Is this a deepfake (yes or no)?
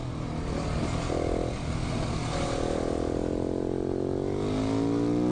no